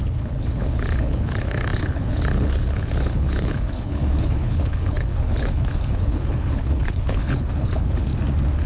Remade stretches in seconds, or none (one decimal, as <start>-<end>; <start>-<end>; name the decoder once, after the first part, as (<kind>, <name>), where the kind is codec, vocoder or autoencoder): 0.0-8.1 (codec, HILCodec)